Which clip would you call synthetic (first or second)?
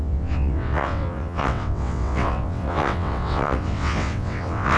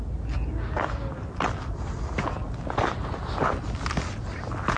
first